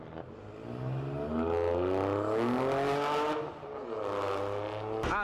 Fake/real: real